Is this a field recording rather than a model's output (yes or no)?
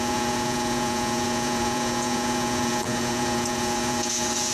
no